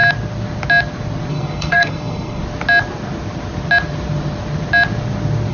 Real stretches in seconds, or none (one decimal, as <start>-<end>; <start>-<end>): 0.0-1.3; 2.4-5.5